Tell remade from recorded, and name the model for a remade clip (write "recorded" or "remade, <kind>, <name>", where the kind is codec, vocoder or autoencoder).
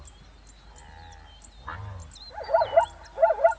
recorded